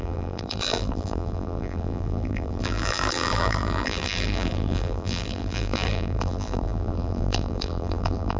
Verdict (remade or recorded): remade